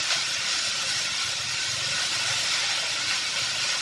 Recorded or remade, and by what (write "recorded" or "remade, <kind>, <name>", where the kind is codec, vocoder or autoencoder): recorded